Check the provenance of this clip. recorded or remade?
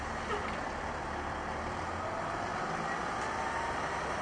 recorded